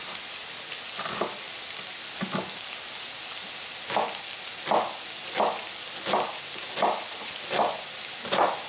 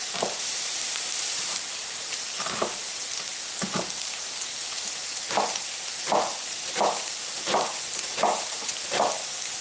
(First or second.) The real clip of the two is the first